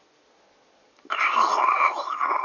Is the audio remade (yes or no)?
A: no